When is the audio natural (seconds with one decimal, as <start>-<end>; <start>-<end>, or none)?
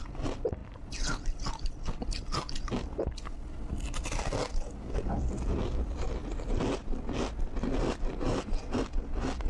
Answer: 0.0-9.5